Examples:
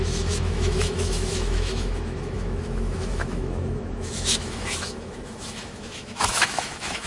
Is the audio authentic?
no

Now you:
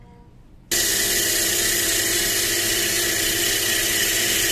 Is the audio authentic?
yes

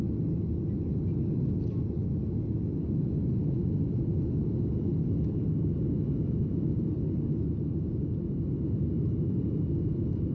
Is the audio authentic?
yes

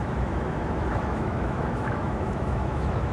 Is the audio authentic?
no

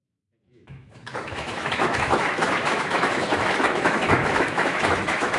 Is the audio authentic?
no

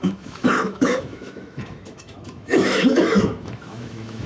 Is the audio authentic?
no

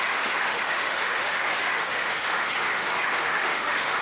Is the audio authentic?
no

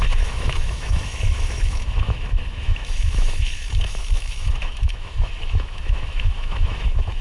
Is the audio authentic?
no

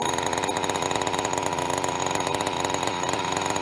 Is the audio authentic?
yes